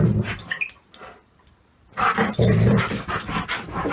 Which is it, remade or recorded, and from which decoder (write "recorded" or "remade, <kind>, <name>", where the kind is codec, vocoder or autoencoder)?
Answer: recorded